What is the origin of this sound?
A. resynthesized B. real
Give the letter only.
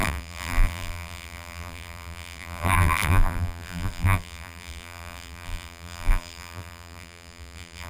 A